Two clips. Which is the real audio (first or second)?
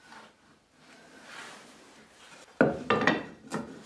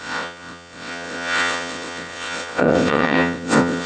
first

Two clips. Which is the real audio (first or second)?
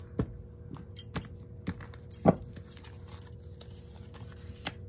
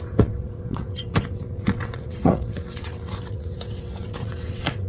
first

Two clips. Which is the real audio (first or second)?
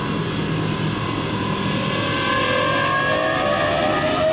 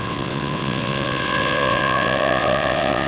first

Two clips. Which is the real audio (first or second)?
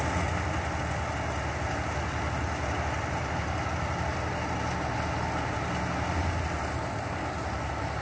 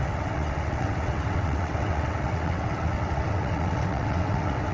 first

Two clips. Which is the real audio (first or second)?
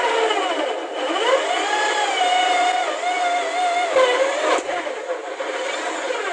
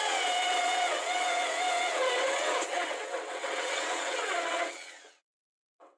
first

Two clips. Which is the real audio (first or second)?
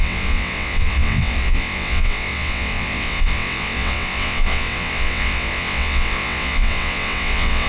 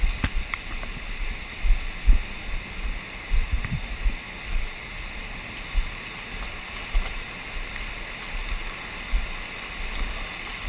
second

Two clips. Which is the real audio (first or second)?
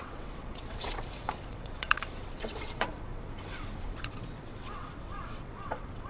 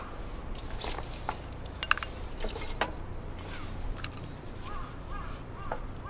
second